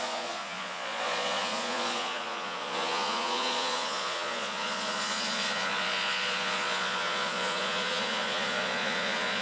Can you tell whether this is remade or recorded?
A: remade